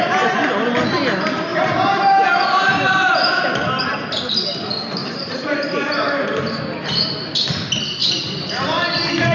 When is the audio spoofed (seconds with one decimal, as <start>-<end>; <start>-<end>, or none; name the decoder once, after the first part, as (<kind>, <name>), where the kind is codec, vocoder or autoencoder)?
1.5-3.5 (vocoder, BigVGAN v2); 5.0-7.1